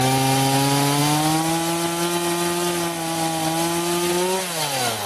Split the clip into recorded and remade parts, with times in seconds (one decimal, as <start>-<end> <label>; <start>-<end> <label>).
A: 0.0-5.1 recorded